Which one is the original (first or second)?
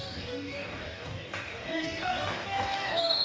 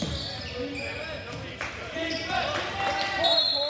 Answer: second